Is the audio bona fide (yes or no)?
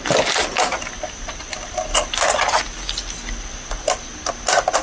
yes